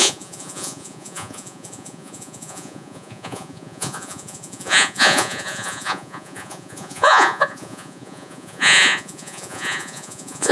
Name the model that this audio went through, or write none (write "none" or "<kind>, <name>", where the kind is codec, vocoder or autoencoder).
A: vocoder, Vocos